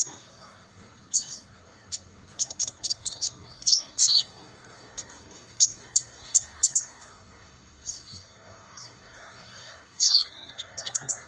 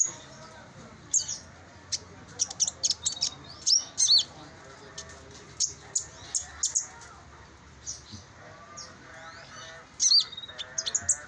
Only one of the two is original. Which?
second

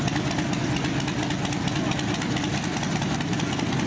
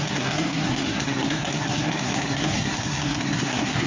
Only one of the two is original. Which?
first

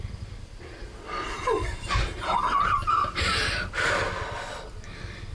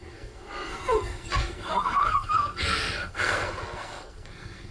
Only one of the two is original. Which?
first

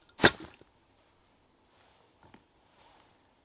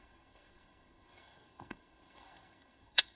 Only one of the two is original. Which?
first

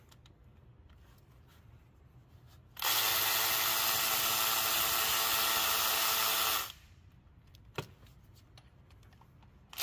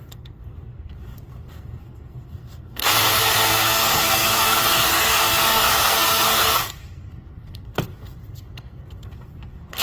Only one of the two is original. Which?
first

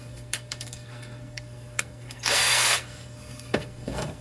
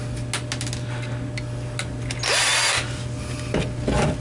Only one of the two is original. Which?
second